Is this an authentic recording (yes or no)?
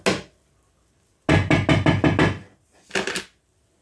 yes